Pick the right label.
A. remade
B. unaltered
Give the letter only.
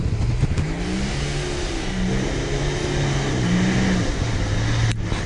B